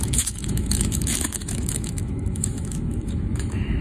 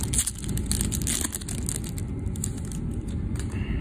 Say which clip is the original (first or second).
second